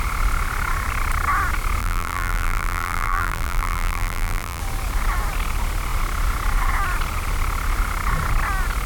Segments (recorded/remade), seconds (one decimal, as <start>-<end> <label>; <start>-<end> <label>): 0.0-1.8 recorded; 1.8-4.6 remade; 4.6-8.9 recorded